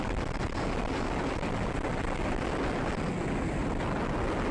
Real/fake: real